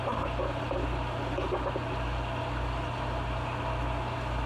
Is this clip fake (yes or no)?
no